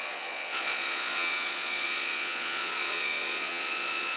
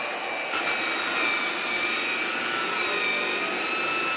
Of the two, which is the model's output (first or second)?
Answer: first